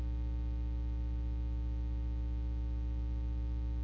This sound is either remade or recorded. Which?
recorded